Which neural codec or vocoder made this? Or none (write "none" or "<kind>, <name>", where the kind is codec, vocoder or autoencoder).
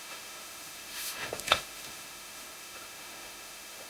autoencoder, DAC-VAE